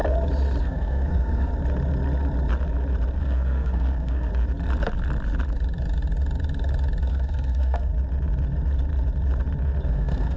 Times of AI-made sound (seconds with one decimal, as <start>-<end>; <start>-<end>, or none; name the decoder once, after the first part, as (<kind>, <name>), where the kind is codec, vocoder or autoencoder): 0.6-1.5 (codec, SNAC); 3.2-4.3; 7.1-7.9; 9.9-10.4